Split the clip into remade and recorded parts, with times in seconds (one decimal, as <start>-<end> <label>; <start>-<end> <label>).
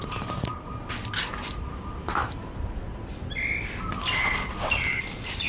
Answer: 0.0-5.5 recorded